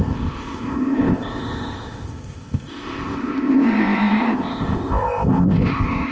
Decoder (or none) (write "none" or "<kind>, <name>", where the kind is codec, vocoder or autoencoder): codec, ZipCodec